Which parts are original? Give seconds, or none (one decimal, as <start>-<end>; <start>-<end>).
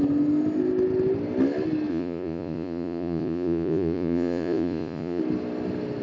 0.0-1.9; 5.2-6.0